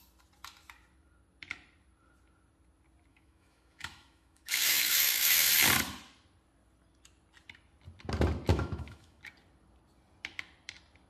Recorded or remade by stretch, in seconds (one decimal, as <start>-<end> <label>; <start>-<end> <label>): 0.0-3.1 recorded; 3.1-5.5 remade; 5.5-8.5 recorded; 8.5-9.2 remade; 9.2-11.1 recorded